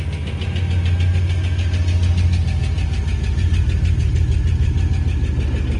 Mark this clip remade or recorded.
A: recorded